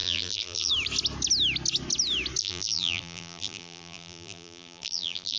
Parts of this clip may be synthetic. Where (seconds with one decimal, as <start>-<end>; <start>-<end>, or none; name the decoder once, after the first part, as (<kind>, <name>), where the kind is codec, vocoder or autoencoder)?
0.0-0.7 (vocoder, BigVGAN v2); 2.4-5.4